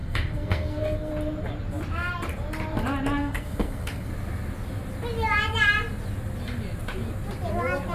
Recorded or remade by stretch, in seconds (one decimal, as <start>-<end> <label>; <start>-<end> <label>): 0.0-1.1 remade; 1.1-3.2 recorded; 3.2-4.1 remade; 4.1-7.9 recorded